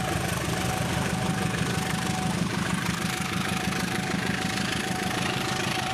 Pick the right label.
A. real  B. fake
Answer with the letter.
B